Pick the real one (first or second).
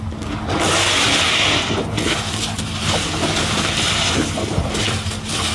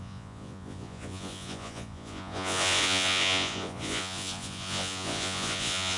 first